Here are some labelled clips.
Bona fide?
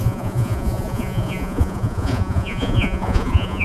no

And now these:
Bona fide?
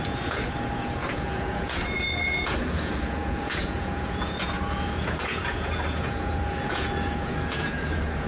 no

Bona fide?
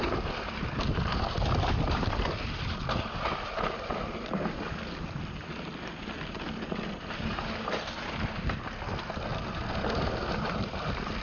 yes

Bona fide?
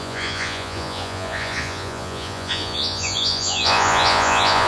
no